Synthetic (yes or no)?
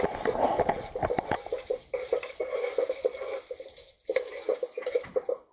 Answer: no